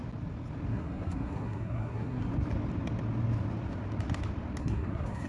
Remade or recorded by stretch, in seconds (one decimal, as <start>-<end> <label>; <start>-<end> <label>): 0.0-0.7 recorded; 0.7-2.3 remade; 2.3-4.6 recorded; 4.6-5.3 remade